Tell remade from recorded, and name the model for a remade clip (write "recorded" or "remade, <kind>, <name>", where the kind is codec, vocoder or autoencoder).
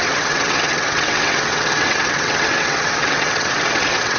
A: remade, vocoder, WaveNeXt